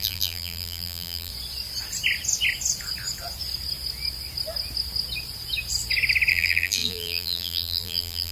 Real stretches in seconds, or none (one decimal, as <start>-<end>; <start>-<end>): 1.3-6.3